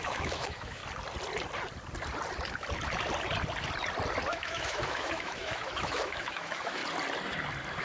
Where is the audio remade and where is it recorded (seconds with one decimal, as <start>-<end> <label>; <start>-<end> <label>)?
0.0-0.8 remade; 0.8-4.3 recorded; 4.3-6.8 remade; 6.8-7.8 recorded